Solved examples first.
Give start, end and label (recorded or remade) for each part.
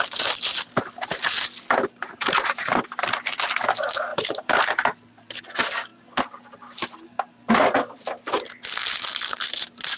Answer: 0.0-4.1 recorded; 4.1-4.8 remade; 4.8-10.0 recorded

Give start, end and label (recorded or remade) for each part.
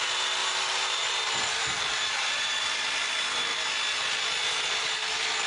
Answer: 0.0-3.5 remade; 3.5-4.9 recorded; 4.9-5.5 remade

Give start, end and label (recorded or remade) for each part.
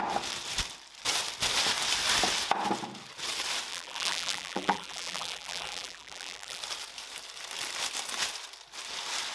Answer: 0.0-3.7 recorded; 3.7-6.6 remade; 6.6-9.3 recorded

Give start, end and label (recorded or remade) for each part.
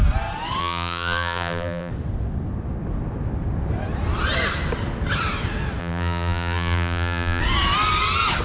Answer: 0.0-0.6 recorded; 0.6-1.9 remade; 1.9-5.8 recorded; 5.8-7.4 remade; 7.4-8.4 recorded